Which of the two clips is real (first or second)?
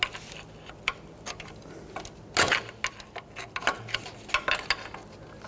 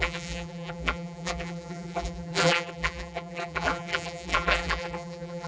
first